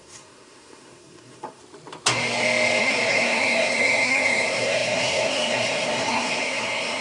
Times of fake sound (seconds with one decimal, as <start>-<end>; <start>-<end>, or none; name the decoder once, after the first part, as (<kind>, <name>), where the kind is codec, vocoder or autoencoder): 0.0-1.6 (codec, SNAC); 2.8-7.0

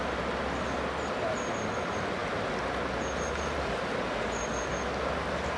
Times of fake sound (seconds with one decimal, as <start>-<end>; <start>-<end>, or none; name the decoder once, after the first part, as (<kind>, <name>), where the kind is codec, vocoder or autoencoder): none

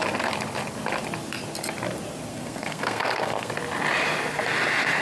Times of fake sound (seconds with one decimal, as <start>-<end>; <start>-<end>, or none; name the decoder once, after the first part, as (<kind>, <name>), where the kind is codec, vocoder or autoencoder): 2.3-3.5 (codec, SNAC)

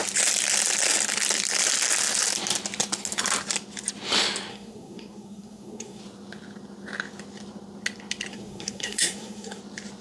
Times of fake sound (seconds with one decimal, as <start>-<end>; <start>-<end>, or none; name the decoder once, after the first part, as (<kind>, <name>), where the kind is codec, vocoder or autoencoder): 4.5-6.0 (codec, SNAC); 8.3-9.6

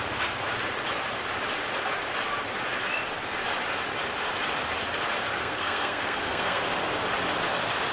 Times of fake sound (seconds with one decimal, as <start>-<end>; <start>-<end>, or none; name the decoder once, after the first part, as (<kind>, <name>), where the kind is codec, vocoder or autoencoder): 5.4-6.6 (codec, SNAC)

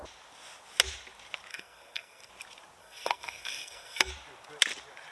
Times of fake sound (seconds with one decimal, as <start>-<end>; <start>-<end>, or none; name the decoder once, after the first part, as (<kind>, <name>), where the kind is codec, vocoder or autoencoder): 1.5-2.3 (codec, SNAC); 2.8-4.1

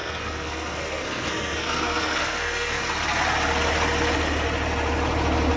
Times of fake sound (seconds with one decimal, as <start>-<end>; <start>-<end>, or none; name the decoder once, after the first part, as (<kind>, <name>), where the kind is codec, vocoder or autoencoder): 0.0-2.8 (codec, SNAC)